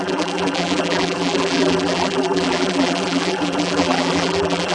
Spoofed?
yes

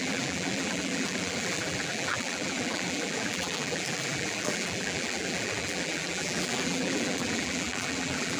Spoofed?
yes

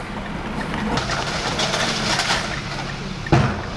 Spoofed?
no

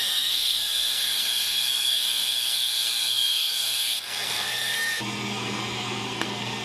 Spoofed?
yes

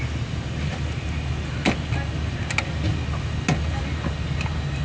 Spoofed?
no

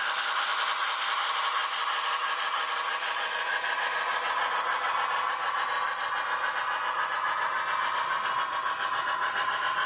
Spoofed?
no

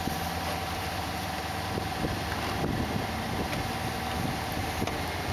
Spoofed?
no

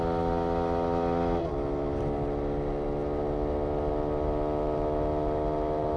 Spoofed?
no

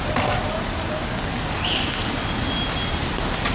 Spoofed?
no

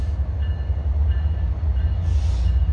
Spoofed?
no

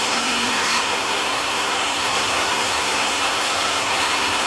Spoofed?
yes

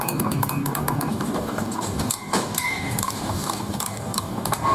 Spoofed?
yes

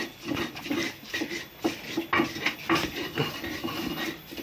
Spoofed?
no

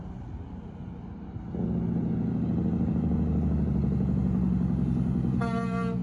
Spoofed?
no